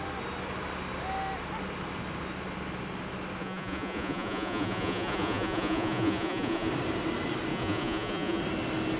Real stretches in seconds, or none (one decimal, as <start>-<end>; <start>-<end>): 0.0-3.4; 6.7-7.5; 8.4-9.0